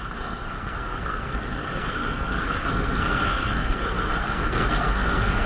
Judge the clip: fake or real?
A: fake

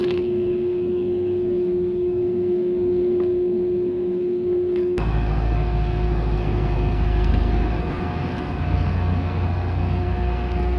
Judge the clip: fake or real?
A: fake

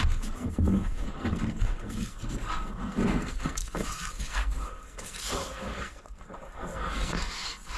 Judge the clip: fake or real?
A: fake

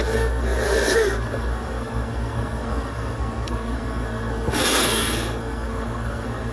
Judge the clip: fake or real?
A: fake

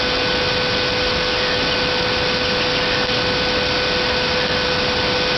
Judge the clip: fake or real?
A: real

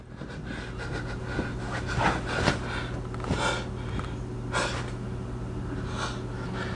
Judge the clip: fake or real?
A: real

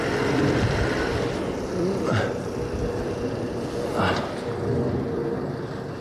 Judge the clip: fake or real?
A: real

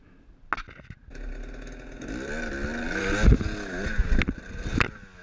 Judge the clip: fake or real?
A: real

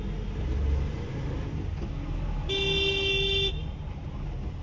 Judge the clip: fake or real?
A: real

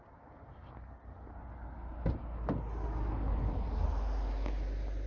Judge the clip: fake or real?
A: real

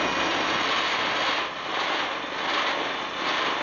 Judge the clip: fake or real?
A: real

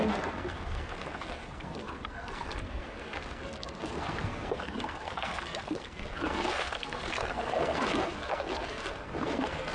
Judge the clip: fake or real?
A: fake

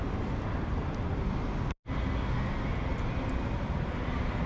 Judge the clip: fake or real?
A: real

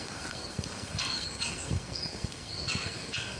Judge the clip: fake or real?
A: fake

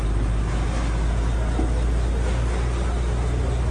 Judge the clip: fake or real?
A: real